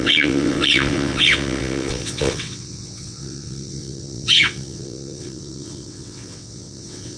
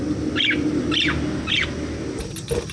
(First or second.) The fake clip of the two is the first